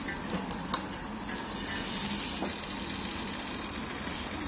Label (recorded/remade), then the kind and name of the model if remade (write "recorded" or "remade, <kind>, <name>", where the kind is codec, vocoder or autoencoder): recorded